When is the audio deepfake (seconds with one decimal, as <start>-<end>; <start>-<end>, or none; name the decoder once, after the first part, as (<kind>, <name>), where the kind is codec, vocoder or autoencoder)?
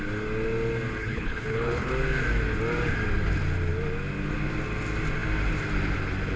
1.0-1.9 (codec, HILCodec)